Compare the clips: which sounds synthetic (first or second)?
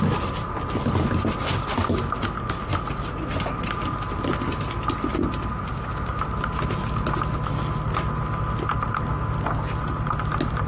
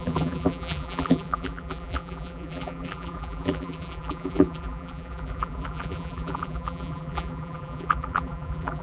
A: second